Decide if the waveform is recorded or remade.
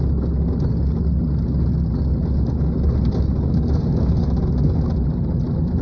recorded